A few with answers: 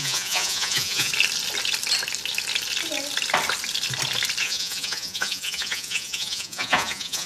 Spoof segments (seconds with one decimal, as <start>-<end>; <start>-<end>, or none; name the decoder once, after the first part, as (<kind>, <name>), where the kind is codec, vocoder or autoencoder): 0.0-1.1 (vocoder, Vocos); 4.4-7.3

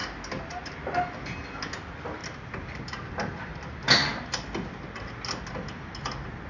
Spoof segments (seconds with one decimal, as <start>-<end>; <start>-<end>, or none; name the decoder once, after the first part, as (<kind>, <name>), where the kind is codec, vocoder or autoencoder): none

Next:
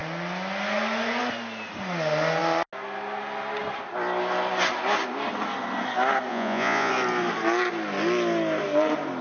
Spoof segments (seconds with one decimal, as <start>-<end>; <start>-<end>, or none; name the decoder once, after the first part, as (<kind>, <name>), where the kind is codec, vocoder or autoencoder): 6.3-6.9 (vocoder, Vocos)